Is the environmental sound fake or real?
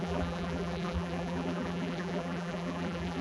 fake